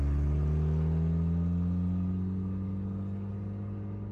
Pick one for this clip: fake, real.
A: real